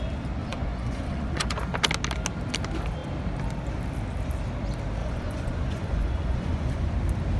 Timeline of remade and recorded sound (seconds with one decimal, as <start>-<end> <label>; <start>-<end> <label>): 0.0-0.4 recorded; 0.4-1.7 remade; 1.7-5.0 recorded; 5.0-6.9 remade; 6.9-7.4 recorded